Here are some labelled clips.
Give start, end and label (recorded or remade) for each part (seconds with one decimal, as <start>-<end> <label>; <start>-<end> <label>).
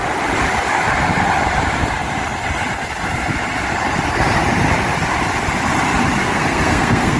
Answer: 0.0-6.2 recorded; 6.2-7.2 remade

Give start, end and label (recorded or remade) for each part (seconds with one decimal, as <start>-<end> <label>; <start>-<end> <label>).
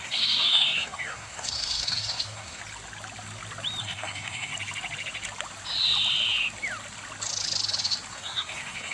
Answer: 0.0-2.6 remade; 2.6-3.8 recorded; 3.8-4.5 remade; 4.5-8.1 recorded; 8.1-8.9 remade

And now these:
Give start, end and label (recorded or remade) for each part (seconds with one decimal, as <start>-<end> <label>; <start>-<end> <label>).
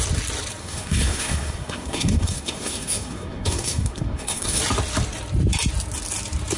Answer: 0.0-0.6 recorded; 0.6-4.6 remade; 4.6-6.6 recorded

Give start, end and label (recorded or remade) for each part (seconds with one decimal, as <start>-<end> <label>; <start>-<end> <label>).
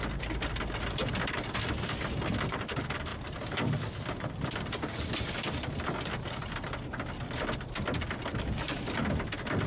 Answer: 0.0-9.7 recorded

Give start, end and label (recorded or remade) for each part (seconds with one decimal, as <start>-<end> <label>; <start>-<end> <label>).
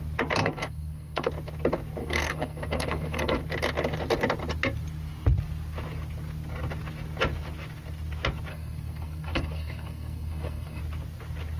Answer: 0.0-0.4 recorded; 0.4-1.3 remade; 1.3-2.0 recorded; 2.0-3.4 remade; 3.4-8.5 recorded; 8.5-10.8 remade; 10.8-11.6 recorded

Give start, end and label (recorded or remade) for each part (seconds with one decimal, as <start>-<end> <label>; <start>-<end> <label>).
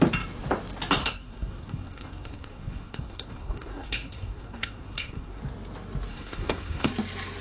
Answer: 0.0-1.0 recorded; 1.0-5.4 remade; 5.4-6.1 recorded; 6.1-6.9 remade; 6.9-7.4 recorded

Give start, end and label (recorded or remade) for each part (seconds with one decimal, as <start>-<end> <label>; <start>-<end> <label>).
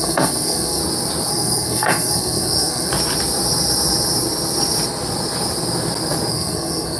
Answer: 0.0-0.8 remade; 0.8-1.3 recorded; 1.3-2.9 remade; 2.9-6.3 recorded; 6.3-7.0 remade